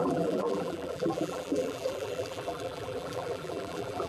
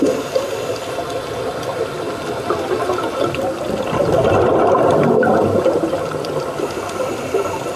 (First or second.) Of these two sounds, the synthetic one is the first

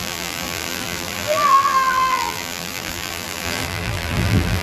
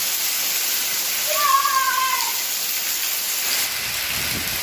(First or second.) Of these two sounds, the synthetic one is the first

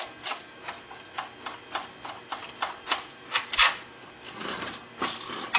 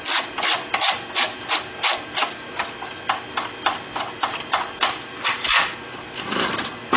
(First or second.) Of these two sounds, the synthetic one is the second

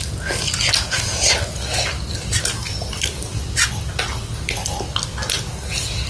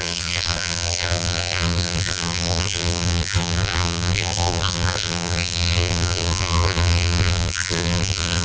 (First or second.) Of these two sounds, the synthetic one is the second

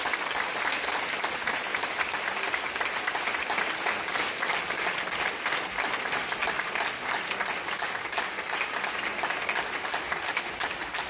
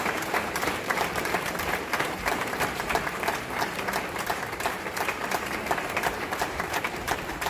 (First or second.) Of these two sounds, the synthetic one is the second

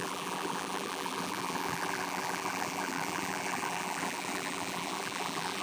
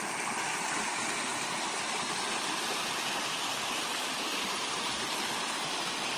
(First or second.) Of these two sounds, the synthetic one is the first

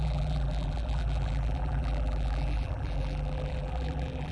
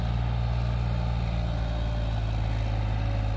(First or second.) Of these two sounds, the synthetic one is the first